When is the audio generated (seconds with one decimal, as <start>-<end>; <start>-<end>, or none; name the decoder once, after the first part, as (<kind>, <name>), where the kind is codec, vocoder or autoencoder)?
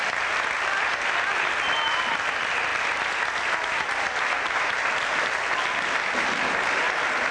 none